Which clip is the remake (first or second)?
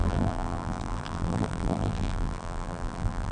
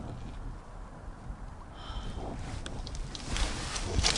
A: first